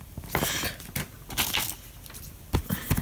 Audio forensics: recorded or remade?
recorded